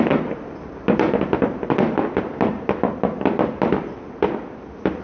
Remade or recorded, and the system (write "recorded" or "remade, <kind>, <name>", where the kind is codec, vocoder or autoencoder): recorded